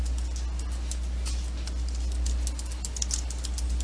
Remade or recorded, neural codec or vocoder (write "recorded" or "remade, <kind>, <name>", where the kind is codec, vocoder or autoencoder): recorded